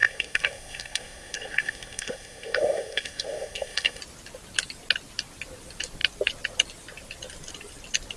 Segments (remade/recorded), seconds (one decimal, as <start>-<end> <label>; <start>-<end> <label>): 0.0-4.0 remade; 4.0-8.2 recorded